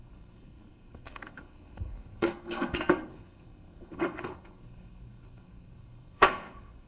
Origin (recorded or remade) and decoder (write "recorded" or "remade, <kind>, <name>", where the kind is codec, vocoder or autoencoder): remade, codec, SNAC